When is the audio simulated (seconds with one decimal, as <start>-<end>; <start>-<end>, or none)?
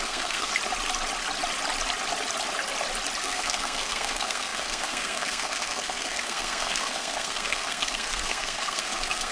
0.0-0.5; 3.2-9.3